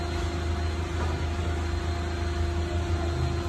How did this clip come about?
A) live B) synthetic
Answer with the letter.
A